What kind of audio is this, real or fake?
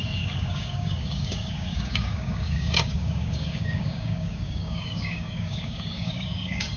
fake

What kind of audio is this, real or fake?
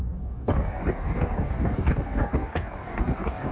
fake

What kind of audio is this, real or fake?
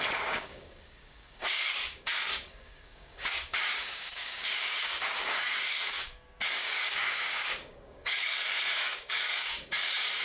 fake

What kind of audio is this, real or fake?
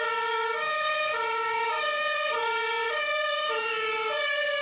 fake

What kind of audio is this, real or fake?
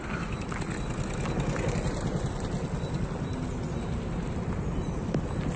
real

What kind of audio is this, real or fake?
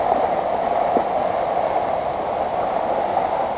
real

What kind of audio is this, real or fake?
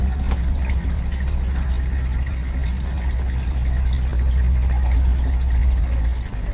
real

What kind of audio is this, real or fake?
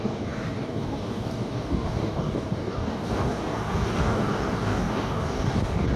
fake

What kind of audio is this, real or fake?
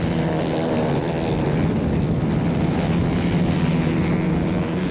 real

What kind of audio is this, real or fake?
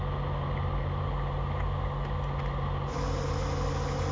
real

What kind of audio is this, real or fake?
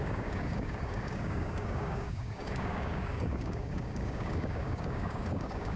fake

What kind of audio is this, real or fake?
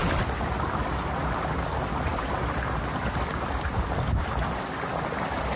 real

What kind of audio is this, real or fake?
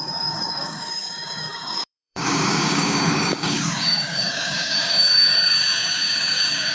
fake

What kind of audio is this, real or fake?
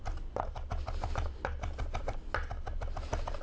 real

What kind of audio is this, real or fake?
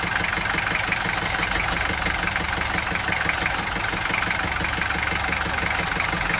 real